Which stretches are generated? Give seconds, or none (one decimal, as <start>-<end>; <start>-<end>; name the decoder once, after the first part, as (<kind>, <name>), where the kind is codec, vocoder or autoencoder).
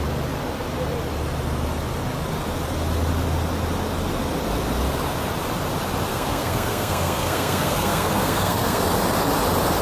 6.1-8.8 (codec, SNAC)